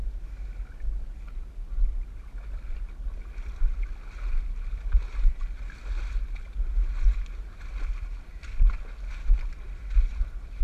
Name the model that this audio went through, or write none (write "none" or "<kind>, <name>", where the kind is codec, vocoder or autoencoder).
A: none